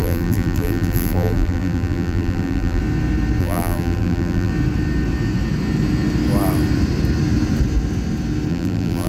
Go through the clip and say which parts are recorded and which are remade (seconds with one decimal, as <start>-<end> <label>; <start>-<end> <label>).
0.0-2.8 remade; 2.8-3.4 recorded; 3.4-4.5 remade; 4.5-8.5 recorded; 8.5-9.1 remade